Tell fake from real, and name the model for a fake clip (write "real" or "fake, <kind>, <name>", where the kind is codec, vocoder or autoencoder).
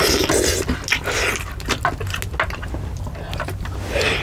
real